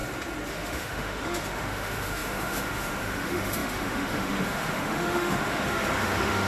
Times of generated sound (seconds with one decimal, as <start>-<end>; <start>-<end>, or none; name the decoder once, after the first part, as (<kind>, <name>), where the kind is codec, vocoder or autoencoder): 0.5-6.5 (autoencoder, DAC-VAE)